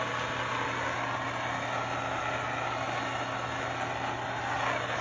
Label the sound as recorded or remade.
recorded